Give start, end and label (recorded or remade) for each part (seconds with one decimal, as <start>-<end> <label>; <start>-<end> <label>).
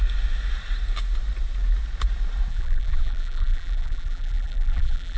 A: 0.0-2.5 recorded; 2.5-5.2 remade